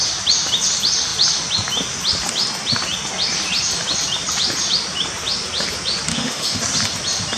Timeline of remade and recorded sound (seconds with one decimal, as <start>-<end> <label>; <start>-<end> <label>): 0.0-6.1 recorded; 6.1-6.6 remade; 6.6-7.4 recorded